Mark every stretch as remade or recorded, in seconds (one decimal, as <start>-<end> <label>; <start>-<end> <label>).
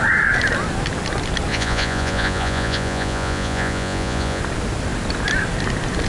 0.0-1.5 recorded; 1.5-4.4 remade; 4.4-6.1 recorded